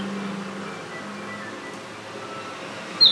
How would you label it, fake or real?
real